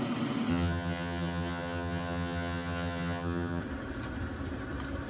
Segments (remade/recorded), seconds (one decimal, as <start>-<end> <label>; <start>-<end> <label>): 0.0-0.5 recorded; 0.5-3.6 remade; 3.6-5.1 recorded